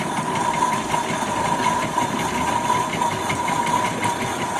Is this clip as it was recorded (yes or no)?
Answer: no